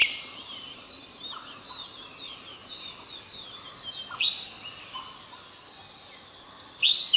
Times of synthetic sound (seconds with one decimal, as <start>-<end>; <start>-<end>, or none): 0.0-1.5